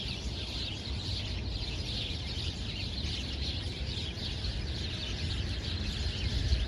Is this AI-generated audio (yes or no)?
yes